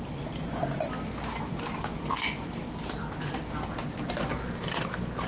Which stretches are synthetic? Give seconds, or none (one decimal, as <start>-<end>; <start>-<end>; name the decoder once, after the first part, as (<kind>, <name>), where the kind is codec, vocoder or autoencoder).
none